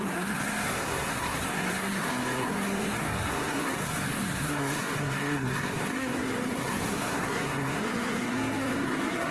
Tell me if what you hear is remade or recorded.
remade